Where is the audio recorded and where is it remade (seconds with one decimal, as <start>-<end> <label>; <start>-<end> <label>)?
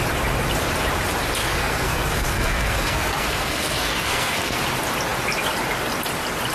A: 0.0-1.4 recorded; 1.4-4.6 remade; 4.6-6.5 recorded